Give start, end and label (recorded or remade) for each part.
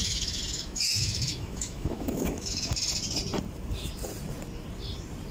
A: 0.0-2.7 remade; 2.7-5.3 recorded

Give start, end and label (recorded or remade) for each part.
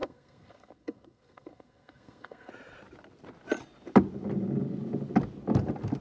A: 0.0-2.5 remade; 2.5-6.0 recorded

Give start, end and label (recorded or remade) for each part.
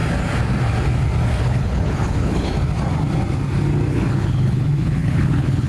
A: 0.0-1.4 recorded; 1.4-2.5 remade; 2.5-3.9 recorded; 3.9-5.7 remade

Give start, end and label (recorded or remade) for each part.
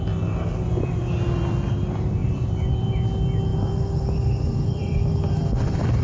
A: 0.0-2.2 recorded; 2.2-2.9 remade; 2.9-3.5 recorded; 3.5-5.3 remade; 5.3-6.0 recorded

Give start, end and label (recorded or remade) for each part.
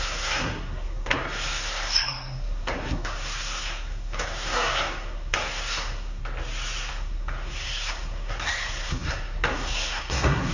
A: 0.0-6.2 remade; 6.2-6.9 recorded; 6.9-10.5 remade